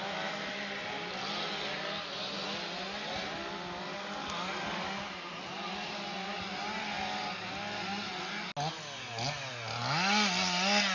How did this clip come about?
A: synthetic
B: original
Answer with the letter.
B